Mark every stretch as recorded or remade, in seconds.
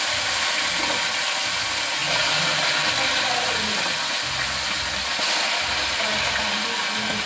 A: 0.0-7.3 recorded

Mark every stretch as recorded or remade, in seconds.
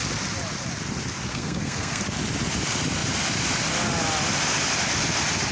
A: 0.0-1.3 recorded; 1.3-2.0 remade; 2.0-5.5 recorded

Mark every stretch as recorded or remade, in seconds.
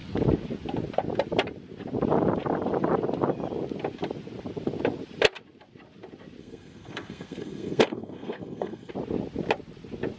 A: 0.0-6.4 recorded; 6.4-8.9 remade; 8.9-10.2 recorded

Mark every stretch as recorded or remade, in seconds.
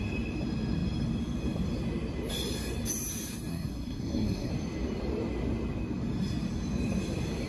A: 0.0-3.5 recorded; 3.5-4.5 remade; 4.5-7.5 recorded